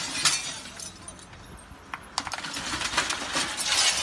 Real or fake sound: real